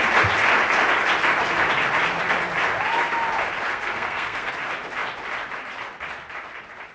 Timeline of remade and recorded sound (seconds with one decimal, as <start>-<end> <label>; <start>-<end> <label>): 0.0-3.7 recorded; 3.7-4.5 remade; 4.5-6.9 recorded